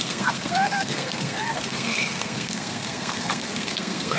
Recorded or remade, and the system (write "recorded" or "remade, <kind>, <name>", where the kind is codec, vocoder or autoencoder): remade, codec, SNAC